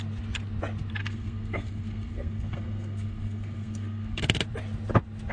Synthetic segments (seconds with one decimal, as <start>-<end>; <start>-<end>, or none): 1.0-4.2